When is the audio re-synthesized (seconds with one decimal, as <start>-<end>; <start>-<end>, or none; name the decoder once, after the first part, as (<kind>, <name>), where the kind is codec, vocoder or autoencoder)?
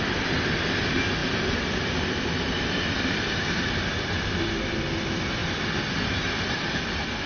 1.2-4.5 (vocoder, BigVGAN v2)